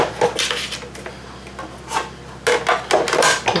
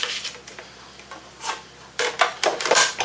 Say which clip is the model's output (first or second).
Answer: second